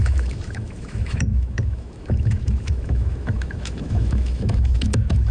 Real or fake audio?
fake